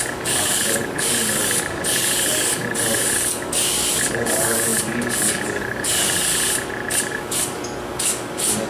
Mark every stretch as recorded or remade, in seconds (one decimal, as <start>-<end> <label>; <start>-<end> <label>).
0.0-6.3 remade; 6.3-7.0 recorded; 7.0-8.7 remade